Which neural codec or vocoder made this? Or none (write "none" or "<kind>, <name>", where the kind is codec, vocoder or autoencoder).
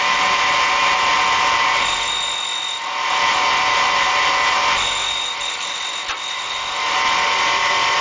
none